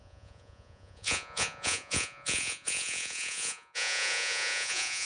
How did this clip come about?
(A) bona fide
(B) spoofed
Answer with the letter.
B